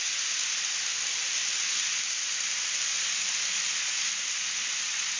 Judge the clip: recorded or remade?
recorded